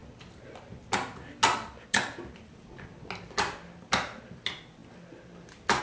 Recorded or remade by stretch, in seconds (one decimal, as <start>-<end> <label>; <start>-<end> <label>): 0.0-5.8 recorded